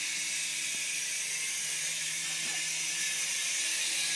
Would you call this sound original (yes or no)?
yes